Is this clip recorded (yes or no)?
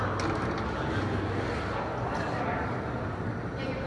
yes